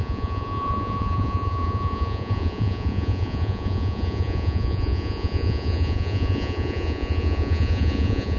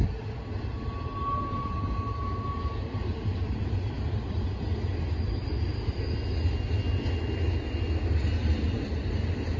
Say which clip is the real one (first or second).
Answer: second